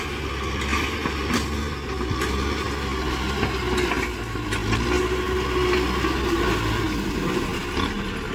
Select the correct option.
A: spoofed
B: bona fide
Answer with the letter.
B